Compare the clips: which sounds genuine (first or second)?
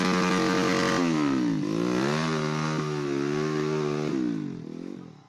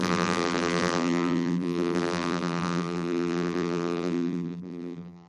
first